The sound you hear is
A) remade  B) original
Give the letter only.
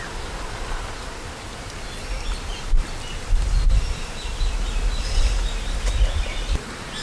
B